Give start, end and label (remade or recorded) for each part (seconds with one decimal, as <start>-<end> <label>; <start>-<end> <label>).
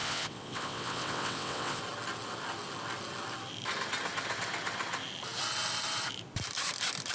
0.0-1.8 remade; 1.8-7.1 recorded